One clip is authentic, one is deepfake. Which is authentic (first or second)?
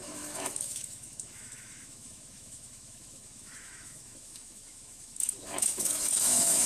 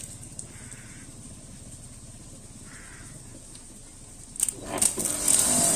second